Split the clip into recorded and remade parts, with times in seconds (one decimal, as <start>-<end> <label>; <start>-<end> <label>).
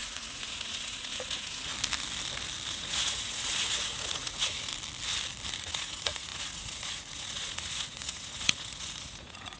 0.0-1.7 remade; 1.7-2.7 recorded; 2.7-4.7 remade; 4.7-5.6 recorded; 5.6-9.6 remade